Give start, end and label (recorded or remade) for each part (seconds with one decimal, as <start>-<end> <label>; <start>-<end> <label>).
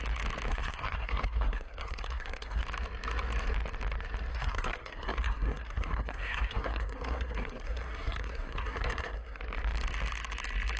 0.0-0.5 recorded; 0.5-2.6 remade; 2.6-4.3 recorded; 4.3-9.4 remade; 9.4-10.8 recorded